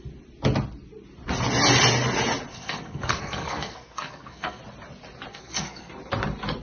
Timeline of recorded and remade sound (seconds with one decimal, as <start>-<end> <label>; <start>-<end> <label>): 0.0-2.5 recorded; 2.5-4.6 remade; 4.6-5.3 recorded; 5.3-5.9 remade; 5.9-6.6 recorded